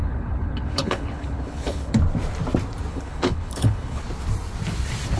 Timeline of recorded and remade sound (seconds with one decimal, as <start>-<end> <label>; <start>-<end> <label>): 0.0-1.9 remade; 1.9-2.9 recorded; 2.9-4.0 remade; 4.0-5.2 recorded